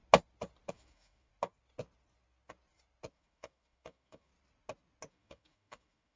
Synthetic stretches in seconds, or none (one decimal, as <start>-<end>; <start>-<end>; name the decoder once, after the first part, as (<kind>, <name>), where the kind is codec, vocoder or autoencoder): 0.7-1.3 (autoencoder, DAC-VAE); 3.1-4.3; 5.1-6.2